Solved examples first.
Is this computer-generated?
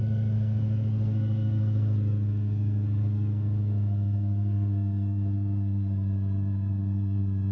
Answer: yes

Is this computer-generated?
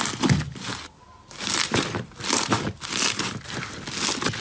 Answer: no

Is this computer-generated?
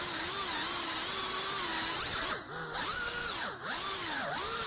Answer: no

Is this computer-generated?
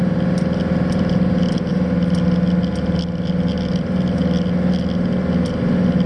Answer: no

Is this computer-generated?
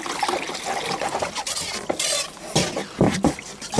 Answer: no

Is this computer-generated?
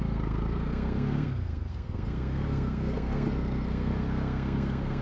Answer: yes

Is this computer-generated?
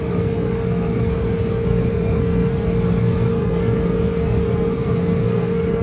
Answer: yes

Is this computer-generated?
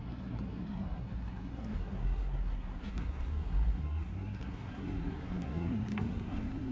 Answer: yes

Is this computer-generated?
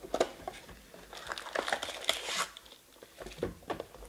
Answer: no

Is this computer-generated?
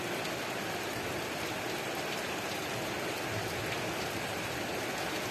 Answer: no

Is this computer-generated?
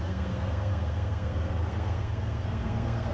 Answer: yes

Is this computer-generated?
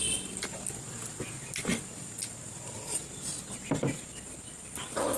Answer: no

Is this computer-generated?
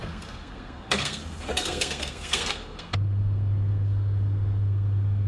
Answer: yes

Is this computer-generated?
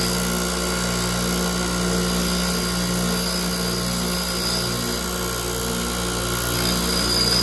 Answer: no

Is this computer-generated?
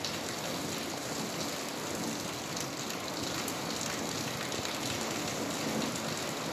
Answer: no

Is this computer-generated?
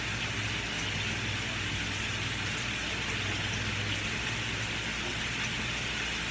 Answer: no